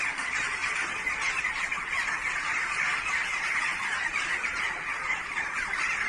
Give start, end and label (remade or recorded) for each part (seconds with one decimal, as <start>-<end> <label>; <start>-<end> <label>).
0.0-0.6 remade; 0.6-1.4 recorded; 1.4-2.4 remade; 2.4-3.5 recorded; 3.5-6.1 remade